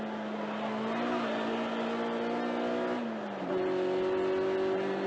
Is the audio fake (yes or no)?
no